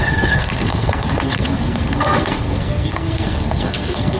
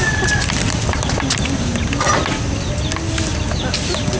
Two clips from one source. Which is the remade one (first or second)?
first